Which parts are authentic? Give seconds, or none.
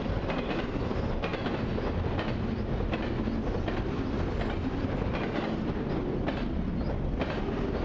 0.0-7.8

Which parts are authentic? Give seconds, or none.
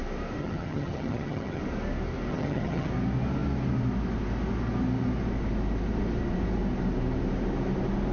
0.0-0.4; 1.6-2.3; 2.9-8.1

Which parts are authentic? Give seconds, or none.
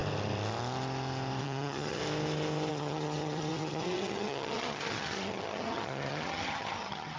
0.0-1.4; 2.0-2.7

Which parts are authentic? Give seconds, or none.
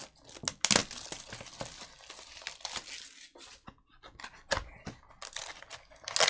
0.0-6.3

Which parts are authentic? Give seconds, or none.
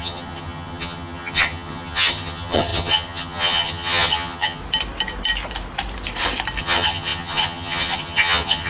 4.6-6.6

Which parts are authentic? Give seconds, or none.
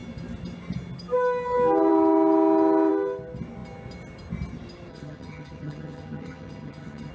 0.0-4.9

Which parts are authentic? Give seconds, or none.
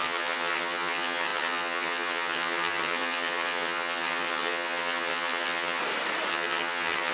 5.8-6.3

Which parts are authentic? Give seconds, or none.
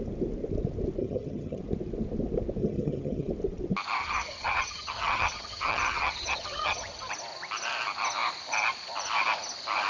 0.0-1.0; 1.6-2.6; 3.3-4.0; 7.1-9.9